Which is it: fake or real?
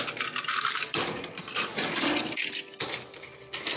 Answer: fake